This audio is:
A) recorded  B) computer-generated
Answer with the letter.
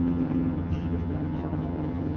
B